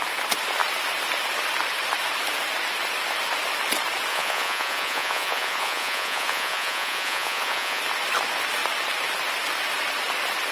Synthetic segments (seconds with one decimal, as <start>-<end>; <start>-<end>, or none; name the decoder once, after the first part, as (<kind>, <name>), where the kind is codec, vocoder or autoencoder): 4.1-7.8 (vocoder, Vocos)